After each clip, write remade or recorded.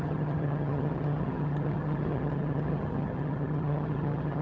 remade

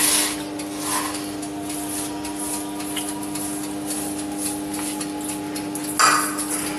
recorded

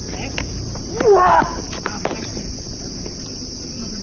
remade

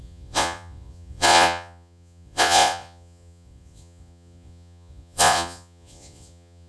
remade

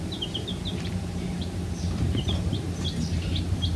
remade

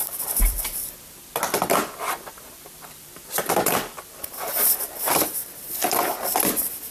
remade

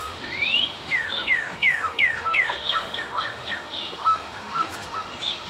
remade